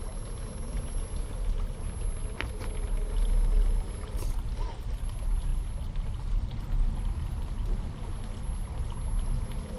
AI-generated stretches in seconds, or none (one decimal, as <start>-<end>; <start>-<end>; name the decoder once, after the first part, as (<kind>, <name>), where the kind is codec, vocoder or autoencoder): none